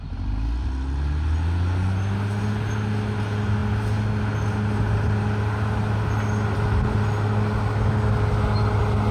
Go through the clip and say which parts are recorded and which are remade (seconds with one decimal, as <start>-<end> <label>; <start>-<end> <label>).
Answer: 0.0-9.1 recorded